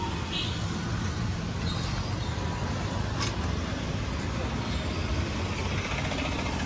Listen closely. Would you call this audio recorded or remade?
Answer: recorded